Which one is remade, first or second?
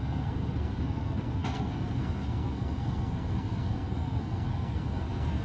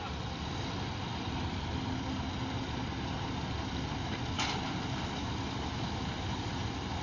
first